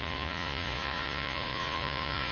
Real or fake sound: fake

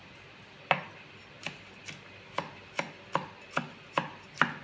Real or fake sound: real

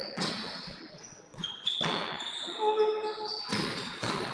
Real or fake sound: fake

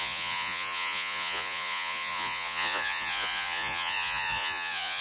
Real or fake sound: fake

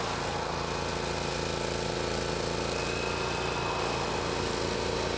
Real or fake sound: real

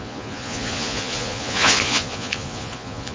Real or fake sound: fake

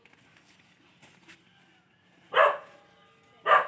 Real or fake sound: real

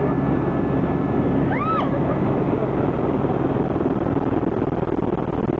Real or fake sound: real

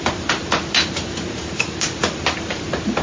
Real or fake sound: real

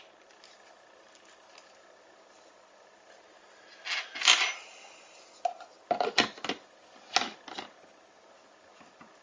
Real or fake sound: real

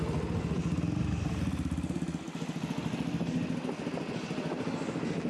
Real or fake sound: real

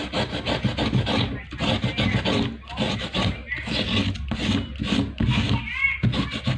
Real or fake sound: real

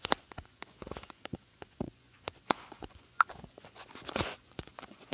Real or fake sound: fake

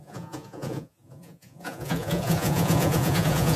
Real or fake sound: fake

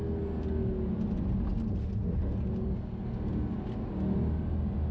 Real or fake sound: real